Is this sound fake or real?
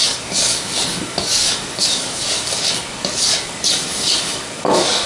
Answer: fake